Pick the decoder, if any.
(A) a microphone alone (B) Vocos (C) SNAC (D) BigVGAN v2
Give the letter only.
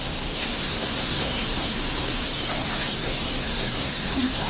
C